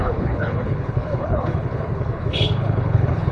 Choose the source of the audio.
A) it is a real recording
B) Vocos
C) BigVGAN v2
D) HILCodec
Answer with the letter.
D